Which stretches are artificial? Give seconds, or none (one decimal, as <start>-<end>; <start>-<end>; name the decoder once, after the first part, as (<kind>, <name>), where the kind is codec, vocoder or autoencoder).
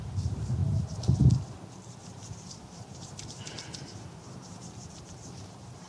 0.0-0.6 (vocoder, BigVGAN v2); 2.1-5.9